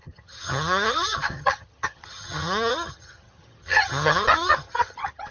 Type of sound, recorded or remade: remade